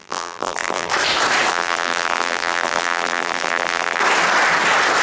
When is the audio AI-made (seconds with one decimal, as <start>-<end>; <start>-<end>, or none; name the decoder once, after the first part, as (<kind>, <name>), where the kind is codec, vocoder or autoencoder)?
0.0-0.9 (vocoder, BigVGAN v2); 1.5-4.0